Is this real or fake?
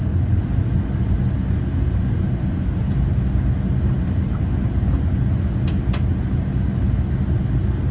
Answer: real